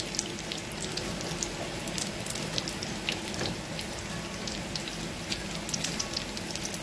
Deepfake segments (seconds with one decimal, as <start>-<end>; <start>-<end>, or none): none